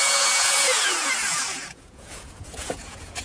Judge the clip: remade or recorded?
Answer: remade